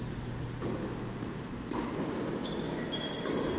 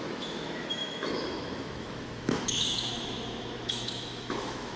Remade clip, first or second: second